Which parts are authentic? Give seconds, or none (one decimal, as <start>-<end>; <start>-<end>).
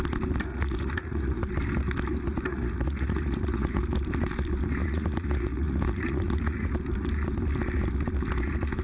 0.0-0.5; 1.4-2.5; 3.8-4.8; 6.7-8.8